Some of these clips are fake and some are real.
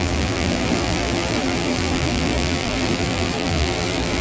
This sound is fake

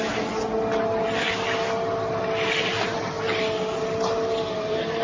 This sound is real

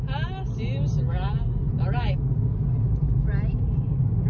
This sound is real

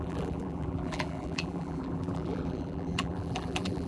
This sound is fake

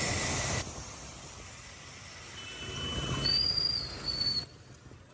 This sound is real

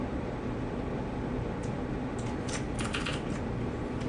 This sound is real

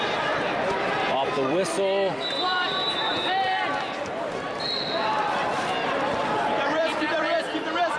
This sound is fake